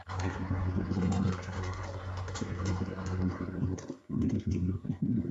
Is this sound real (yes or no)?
no